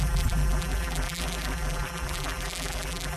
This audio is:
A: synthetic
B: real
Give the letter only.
A